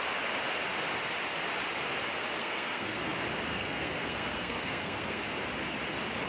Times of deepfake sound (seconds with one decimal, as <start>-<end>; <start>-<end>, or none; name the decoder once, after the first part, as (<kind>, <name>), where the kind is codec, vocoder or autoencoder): 2.4-3.1 (codec, SNAC); 3.5-5.2